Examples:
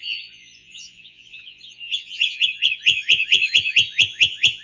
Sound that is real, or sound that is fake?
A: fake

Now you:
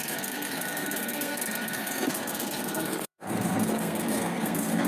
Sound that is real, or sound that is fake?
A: fake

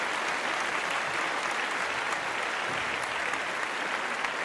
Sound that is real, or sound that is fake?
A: real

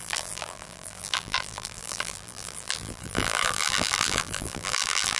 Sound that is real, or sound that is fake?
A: fake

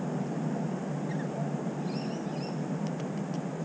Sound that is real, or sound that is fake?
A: real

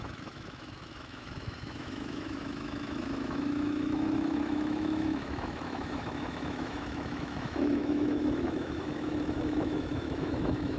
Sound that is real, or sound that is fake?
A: fake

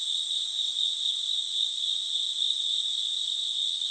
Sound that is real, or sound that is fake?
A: real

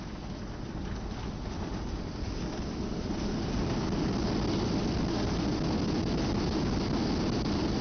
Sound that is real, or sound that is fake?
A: real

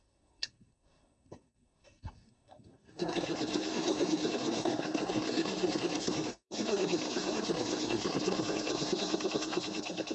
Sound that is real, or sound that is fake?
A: fake